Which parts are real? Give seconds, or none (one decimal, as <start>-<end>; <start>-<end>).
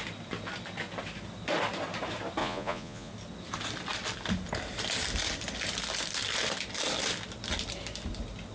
0.0-2.4; 3.1-8.5